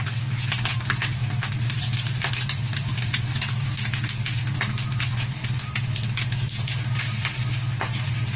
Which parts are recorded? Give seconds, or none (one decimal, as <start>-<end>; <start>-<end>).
0.0-1.2; 3.7-8.4